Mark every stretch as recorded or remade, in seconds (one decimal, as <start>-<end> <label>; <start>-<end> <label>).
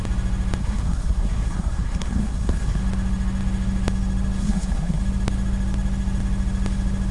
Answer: 0.0-0.6 recorded; 0.6-2.8 remade; 2.8-4.4 recorded; 4.4-5.0 remade; 5.0-7.1 recorded